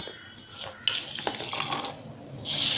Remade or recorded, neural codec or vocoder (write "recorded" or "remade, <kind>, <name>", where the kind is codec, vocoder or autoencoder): recorded